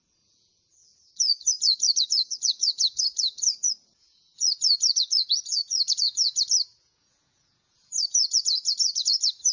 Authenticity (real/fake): fake